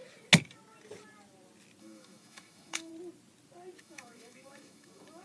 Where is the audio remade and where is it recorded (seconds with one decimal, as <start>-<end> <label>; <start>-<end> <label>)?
0.0-1.8 recorded; 1.8-2.9 remade; 2.9-3.8 recorded; 3.8-5.2 remade